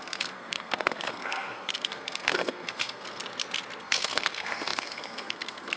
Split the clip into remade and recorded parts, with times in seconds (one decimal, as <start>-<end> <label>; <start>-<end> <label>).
0.0-3.2 remade; 3.2-3.8 recorded; 3.8-5.8 remade

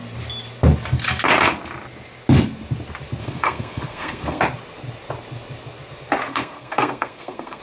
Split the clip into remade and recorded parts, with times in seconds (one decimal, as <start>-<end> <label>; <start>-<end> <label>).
0.0-3.2 recorded; 3.2-4.4 remade; 4.4-6.3 recorded; 6.3-7.6 remade

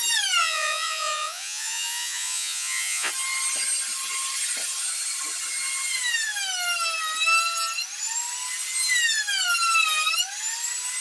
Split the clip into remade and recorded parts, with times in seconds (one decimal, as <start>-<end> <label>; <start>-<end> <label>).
0.0-0.4 recorded; 0.4-3.1 remade; 3.1-11.0 recorded